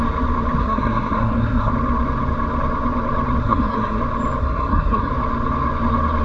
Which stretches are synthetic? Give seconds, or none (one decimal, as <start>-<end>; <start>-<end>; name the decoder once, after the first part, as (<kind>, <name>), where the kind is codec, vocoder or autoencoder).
0.6-1.7 (codec, SNAC); 3.4-4.0; 4.4-5.1